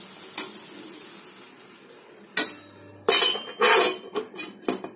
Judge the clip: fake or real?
real